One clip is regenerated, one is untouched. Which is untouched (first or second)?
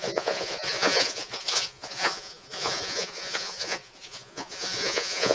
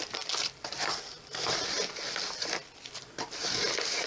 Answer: second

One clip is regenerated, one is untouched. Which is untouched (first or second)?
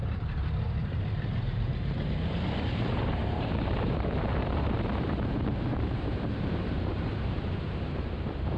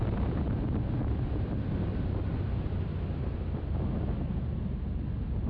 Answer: second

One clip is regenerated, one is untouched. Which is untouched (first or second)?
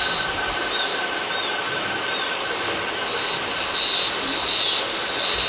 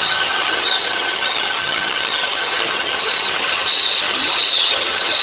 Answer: first